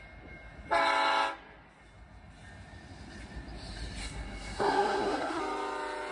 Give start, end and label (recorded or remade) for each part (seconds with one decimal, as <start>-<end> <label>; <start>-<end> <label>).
0.0-4.0 recorded; 4.0-5.4 remade; 5.4-6.1 recorded